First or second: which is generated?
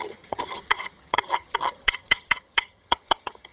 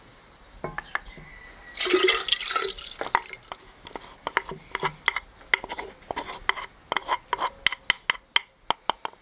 first